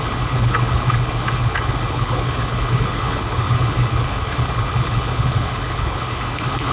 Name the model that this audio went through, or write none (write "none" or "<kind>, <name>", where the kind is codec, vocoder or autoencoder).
codec, HILCodec